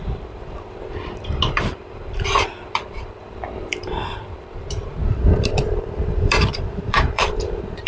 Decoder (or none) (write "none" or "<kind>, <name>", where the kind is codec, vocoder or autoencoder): vocoder, BigVGAN v2